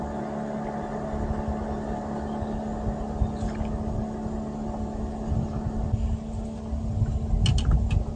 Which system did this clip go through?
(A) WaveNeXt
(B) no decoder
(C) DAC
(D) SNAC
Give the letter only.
B